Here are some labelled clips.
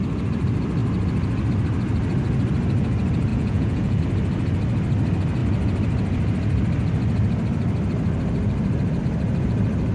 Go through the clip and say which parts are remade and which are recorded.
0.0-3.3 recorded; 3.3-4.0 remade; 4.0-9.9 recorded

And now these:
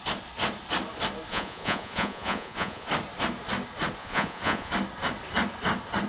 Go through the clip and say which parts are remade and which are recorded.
0.0-1.3 recorded; 1.3-2.9 remade; 2.9-4.0 recorded; 4.0-4.7 remade; 4.7-6.1 recorded

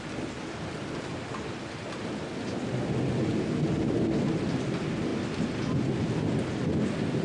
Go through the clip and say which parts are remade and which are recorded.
0.0-7.2 recorded

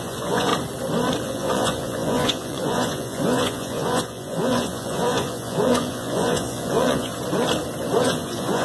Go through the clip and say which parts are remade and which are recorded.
0.0-0.5 remade; 0.5-1.2 recorded; 1.2-7.1 remade; 7.1-8.0 recorded; 8.0-8.6 remade

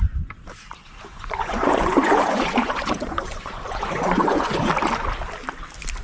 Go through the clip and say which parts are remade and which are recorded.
0.0-1.1 recorded; 1.1-4.7 remade; 4.7-6.0 recorded

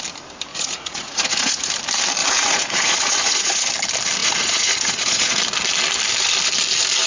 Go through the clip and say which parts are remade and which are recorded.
0.0-0.5 recorded; 0.5-1.7 remade; 1.7-2.2 recorded; 2.2-3.7 remade; 3.7-4.2 recorded; 4.2-5.4 remade; 5.4-7.1 recorded